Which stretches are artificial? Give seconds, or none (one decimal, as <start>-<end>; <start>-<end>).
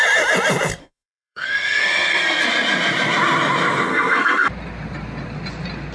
0.8-2.4; 3.9-4.5